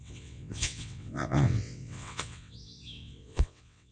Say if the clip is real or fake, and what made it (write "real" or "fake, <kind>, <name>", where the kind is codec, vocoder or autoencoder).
fake, vocoder, WaveNeXt